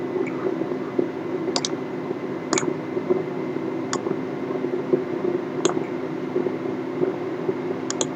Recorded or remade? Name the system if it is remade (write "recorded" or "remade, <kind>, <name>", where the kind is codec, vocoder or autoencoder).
recorded